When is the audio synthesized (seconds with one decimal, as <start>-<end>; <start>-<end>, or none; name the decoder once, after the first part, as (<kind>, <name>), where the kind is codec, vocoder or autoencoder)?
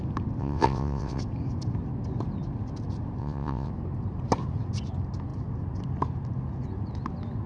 0.4-1.2 (vocoder, WaveNeXt); 3.2-3.7